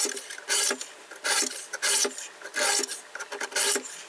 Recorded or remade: recorded